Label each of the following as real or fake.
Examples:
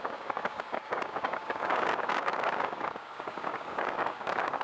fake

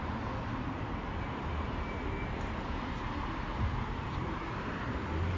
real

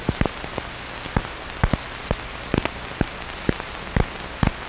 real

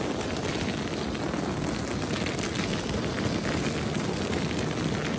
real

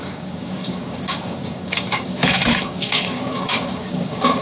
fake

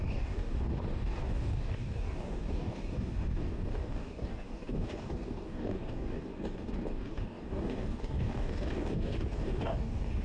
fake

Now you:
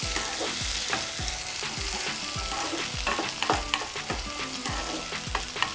real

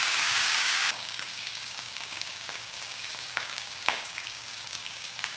fake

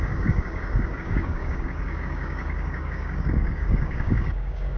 fake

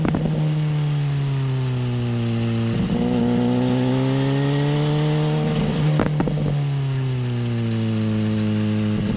real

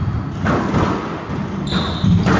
real